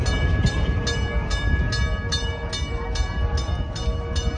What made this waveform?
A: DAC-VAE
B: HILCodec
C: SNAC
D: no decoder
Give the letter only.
D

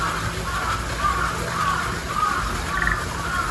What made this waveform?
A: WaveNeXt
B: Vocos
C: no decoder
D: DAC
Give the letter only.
C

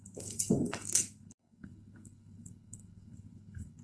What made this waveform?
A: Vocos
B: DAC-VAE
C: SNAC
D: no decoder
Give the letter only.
C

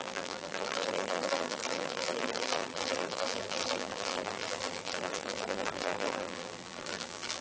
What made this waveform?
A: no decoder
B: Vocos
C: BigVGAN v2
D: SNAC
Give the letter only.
C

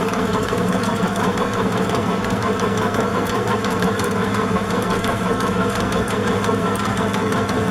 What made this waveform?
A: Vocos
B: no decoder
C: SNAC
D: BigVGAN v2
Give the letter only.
C